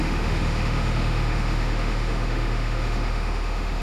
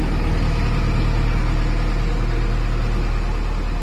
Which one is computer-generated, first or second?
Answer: first